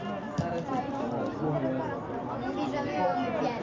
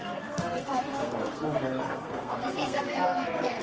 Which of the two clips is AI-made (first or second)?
second